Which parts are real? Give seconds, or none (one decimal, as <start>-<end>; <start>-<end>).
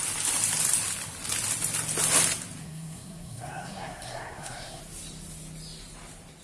0.0-2.6; 4.8-6.4